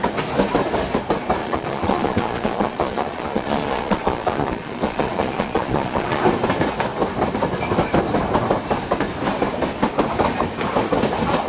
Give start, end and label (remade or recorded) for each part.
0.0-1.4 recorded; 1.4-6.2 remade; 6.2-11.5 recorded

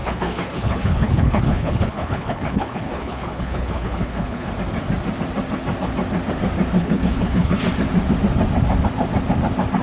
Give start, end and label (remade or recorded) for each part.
0.0-4.5 remade; 4.5-6.8 recorded; 6.8-7.6 remade; 7.6-9.8 recorded

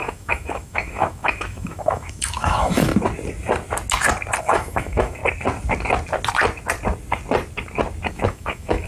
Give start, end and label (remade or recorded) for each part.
0.0-2.9 remade; 2.9-4.4 recorded; 4.4-5.2 remade; 5.2-8.1 recorded; 8.1-8.9 remade

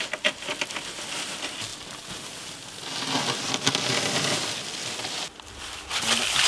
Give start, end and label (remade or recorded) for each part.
0.0-6.5 recorded

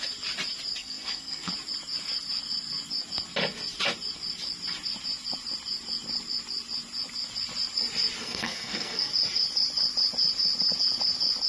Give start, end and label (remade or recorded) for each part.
0.0-0.8 recorded; 0.8-1.5 remade; 1.5-8.2 recorded; 8.2-9.1 remade; 9.1-11.5 recorded

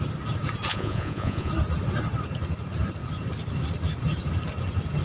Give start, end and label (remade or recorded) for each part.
0.0-0.7 recorded; 0.7-1.5 remade; 1.5-5.0 recorded

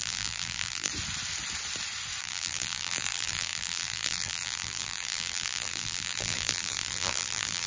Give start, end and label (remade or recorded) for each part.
0.0-0.9 remade; 0.9-2.2 recorded; 2.2-7.7 remade

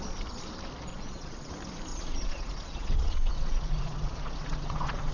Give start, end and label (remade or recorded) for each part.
0.0-0.9 recorded; 0.9-1.5 remade; 1.5-1.9 recorded; 1.9-5.1 remade